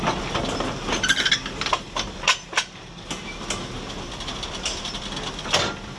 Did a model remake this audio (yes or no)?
no